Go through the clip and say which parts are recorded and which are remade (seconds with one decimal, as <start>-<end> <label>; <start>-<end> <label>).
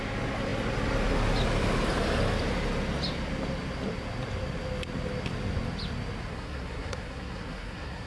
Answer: 0.0-6.3 recorded; 6.3-8.1 remade